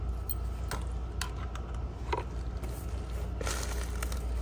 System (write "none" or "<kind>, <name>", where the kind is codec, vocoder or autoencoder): none